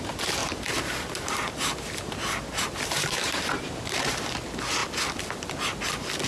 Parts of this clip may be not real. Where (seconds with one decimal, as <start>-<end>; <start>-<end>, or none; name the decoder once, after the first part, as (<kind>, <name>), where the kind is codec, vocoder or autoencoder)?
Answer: 0.4-4.2 (vocoder, BigVGAN v2)